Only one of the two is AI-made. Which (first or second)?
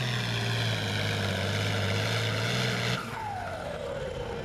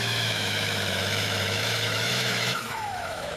second